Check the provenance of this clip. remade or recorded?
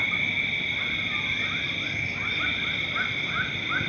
remade